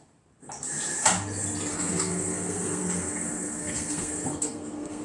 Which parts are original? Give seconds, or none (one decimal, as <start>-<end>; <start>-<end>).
0.0-1.7